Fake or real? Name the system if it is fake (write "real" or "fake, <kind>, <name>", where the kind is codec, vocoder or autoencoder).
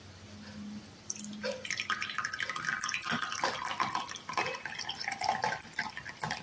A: fake, vocoder, BigVGAN v2